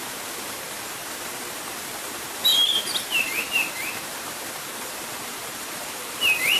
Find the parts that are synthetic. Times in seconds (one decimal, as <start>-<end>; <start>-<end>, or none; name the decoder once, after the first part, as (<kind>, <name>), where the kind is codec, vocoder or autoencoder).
0.0-1.0 (vocoder, BigVGAN v2); 2.0-6.6